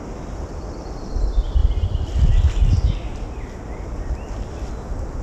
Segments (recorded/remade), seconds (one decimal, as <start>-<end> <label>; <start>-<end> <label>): 0.0-5.2 recorded